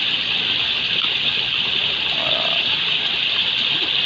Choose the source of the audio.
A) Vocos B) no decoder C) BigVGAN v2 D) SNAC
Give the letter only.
B